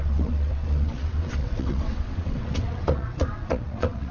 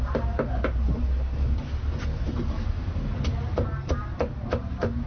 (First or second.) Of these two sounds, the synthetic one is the first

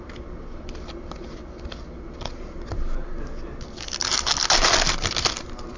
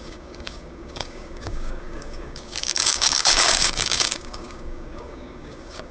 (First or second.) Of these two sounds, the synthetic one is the second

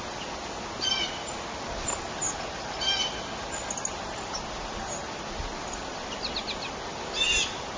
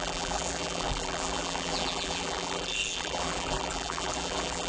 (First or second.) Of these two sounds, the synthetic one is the second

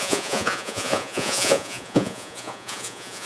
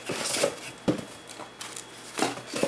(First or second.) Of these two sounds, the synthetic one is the first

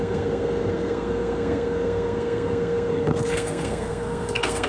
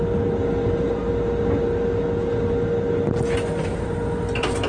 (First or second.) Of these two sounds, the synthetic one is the first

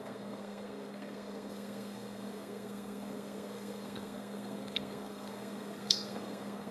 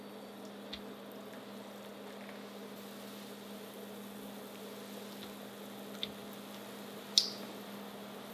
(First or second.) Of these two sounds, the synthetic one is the first